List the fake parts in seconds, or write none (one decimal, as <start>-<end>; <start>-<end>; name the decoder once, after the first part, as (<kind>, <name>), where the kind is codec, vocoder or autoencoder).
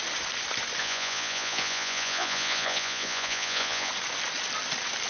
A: 0.8-3.9 (vocoder, Vocos)